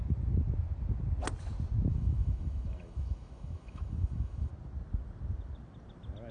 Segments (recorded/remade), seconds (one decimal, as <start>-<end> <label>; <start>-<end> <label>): 0.0-1.9 recorded; 1.9-4.5 remade; 4.5-6.3 recorded